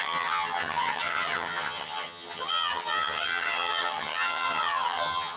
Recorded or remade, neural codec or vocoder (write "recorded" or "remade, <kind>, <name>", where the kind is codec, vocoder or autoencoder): remade, vocoder, HiFi-GAN